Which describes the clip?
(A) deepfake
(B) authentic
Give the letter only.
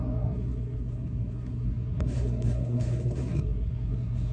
A